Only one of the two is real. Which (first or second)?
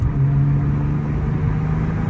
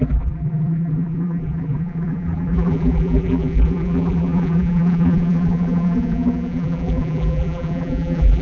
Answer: first